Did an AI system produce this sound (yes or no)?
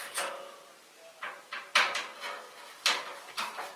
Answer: yes